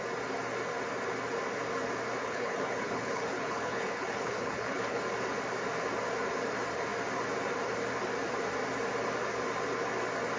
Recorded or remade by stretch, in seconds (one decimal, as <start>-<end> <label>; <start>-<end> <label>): 0.0-2.2 recorded; 2.2-5.0 remade; 5.0-10.4 recorded